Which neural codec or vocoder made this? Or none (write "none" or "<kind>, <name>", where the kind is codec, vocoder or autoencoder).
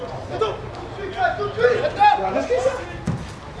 none